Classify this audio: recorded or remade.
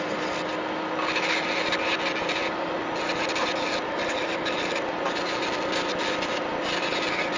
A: recorded